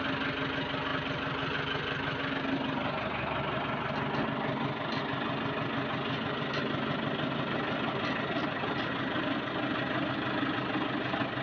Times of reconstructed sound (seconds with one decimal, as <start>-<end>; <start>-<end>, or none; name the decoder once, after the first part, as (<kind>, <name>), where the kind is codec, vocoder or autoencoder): none